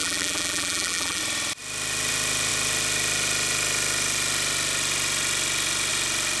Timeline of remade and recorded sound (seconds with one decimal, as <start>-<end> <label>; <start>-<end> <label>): 0.0-1.2 remade; 1.2-6.4 recorded

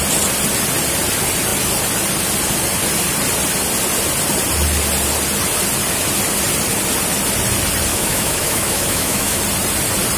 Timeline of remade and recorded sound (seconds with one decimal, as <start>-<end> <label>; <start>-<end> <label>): 0.0-7.9 recorded; 7.9-9.4 remade; 9.4-10.2 recorded

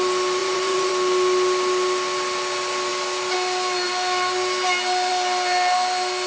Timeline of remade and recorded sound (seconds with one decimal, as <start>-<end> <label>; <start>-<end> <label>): 0.0-0.4 recorded; 0.4-0.9 remade; 0.9-6.3 recorded